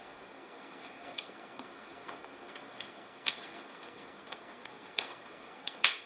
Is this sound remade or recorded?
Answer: remade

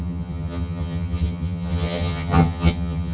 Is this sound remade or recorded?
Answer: remade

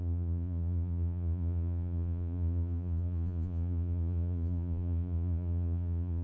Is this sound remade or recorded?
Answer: remade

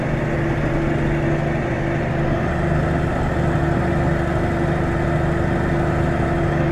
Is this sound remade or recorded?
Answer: recorded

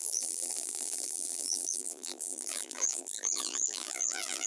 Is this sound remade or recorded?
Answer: remade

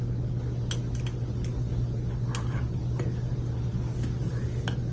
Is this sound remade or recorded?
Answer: recorded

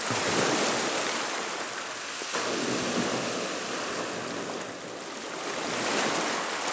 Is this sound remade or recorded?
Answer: recorded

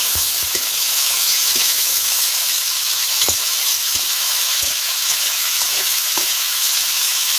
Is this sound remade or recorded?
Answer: remade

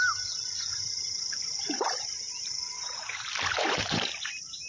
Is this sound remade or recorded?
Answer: remade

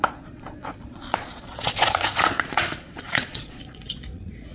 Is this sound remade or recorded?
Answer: remade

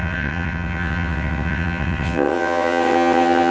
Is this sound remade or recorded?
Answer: remade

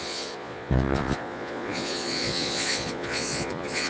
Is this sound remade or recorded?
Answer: remade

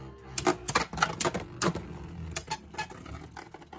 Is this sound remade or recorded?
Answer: recorded